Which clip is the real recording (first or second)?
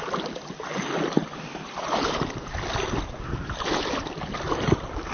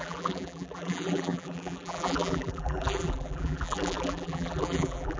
first